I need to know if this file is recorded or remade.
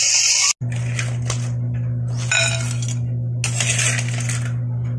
recorded